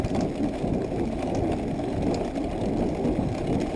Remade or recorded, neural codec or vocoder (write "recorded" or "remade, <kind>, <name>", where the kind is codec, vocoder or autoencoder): recorded